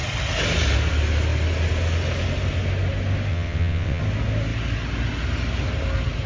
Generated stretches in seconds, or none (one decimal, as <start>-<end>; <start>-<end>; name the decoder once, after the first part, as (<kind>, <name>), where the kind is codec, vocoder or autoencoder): 3.3-4.0 (vocoder, WaveNeXt)